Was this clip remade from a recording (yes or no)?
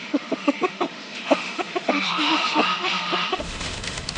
yes